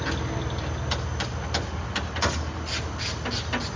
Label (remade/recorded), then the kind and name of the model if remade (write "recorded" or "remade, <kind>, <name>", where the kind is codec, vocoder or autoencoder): recorded